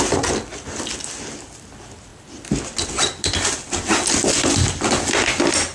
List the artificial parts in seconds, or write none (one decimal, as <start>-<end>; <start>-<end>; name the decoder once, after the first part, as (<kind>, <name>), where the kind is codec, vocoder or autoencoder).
none